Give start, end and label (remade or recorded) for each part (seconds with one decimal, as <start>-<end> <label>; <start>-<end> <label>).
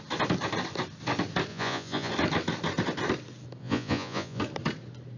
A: 0.0-1.5 recorded; 1.5-2.1 remade; 2.1-3.6 recorded; 3.6-4.4 remade; 4.4-5.2 recorded